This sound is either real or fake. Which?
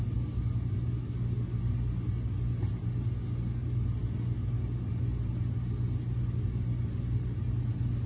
real